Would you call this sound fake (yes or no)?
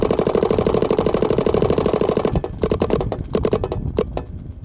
no